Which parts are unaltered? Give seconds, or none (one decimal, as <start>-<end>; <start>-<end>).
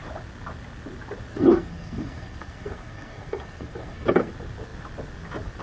0.0-1.3; 4.3-5.6